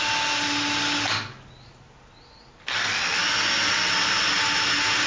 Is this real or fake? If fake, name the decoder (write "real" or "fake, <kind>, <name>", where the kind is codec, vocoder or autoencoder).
real